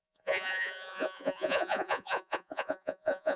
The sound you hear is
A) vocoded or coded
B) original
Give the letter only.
A